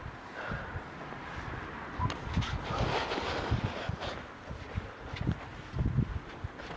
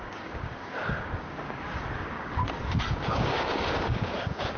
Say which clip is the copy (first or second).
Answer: second